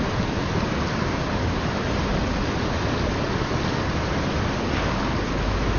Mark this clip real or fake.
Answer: real